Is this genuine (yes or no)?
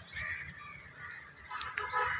yes